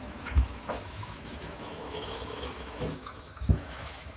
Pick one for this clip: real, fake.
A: fake